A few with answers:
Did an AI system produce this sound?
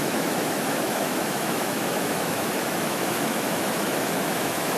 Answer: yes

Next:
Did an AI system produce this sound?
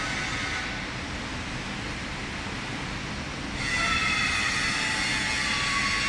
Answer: no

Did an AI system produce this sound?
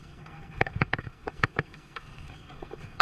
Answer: yes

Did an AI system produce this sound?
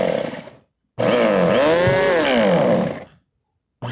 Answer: no